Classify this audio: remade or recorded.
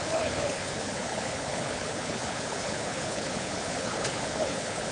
remade